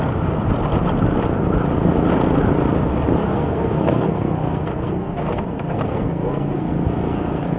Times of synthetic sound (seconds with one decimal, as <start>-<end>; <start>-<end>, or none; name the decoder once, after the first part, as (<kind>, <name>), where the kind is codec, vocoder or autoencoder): 3.2-7.6 (codec, SNAC)